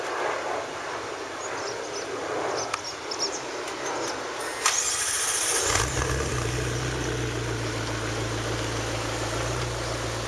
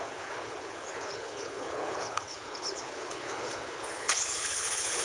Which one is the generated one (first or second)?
second